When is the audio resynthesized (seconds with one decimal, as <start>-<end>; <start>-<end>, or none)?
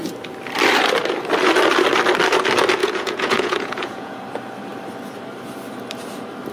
2.8-4.2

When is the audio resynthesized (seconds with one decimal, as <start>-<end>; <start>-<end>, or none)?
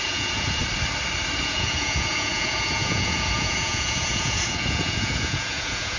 0.0-0.6; 1.4-6.0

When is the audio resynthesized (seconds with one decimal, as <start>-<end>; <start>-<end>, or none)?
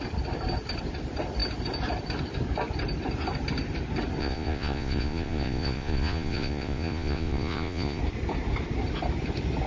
4.2-8.0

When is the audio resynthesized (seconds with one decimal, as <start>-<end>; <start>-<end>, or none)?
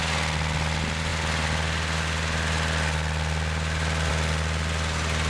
none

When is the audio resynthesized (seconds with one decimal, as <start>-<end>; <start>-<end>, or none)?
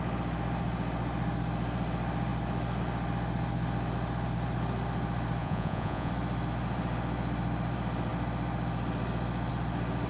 5.4-6.1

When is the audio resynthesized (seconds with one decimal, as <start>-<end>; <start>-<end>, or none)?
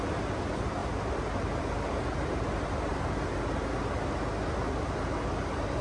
none